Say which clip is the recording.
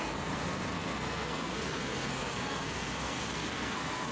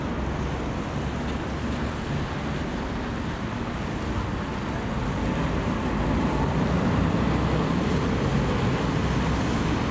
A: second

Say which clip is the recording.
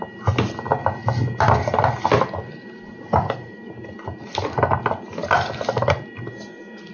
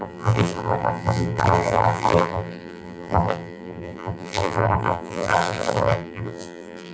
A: first